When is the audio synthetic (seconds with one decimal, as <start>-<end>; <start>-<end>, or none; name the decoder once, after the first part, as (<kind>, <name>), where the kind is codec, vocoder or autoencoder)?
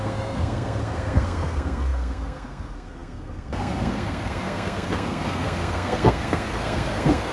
0.0-7.3 (codec, SNAC)